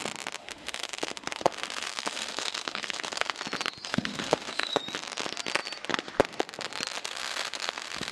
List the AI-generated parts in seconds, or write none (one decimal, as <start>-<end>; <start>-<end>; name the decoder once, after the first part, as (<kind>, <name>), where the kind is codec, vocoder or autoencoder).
0.4-3.4 (autoencoder, DAC-VAE); 3.9-4.8; 7.0-8.1